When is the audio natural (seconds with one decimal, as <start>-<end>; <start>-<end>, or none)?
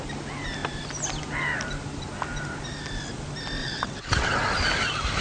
0.0-3.6; 4.3-5.2